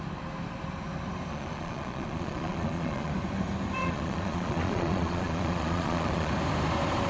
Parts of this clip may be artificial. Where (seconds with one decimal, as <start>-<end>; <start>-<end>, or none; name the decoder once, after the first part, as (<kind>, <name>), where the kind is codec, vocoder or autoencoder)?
1.3-3.1 (vocoder, Vocos); 3.8-6.3